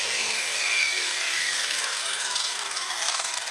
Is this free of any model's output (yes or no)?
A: no